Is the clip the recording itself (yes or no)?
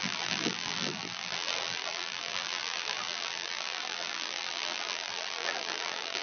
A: no